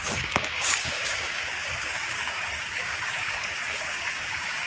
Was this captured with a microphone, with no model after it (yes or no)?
no